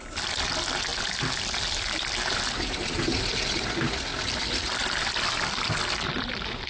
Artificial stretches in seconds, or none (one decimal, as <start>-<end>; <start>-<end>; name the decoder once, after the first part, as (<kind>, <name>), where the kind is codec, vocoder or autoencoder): none